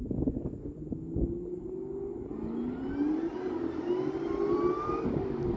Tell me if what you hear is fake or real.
real